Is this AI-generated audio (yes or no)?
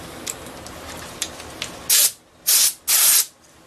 no